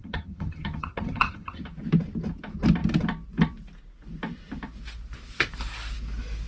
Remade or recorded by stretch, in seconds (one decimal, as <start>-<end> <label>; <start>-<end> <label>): 0.0-1.6 remade; 1.6-6.5 recorded